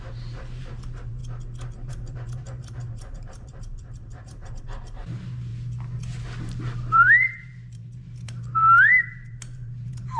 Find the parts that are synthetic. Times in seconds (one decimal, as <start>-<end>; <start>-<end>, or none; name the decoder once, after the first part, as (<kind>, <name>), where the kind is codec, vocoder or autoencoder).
0.0-1.2 (vocoder, BigVGAN v2); 1.9-5.5; 6.4-10.2